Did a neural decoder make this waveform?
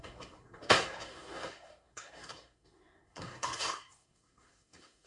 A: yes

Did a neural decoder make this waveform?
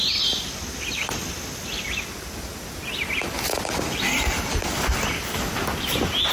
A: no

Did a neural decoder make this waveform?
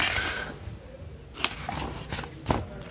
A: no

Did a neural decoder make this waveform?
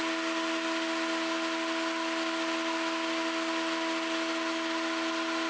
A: no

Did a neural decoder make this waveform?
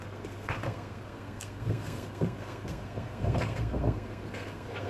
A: yes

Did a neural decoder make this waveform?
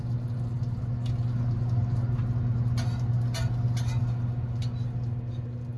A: no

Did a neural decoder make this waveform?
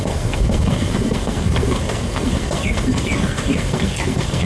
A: yes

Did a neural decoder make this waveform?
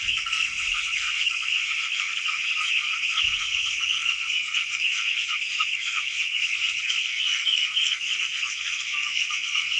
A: yes